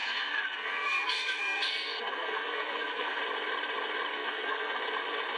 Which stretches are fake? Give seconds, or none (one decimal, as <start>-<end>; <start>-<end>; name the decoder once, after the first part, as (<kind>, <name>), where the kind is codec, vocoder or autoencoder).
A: 0.0-3.2 (codec, SNAC); 4.1-4.8